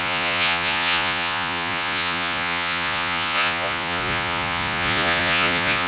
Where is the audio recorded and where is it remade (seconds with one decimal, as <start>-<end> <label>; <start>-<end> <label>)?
0.0-5.9 remade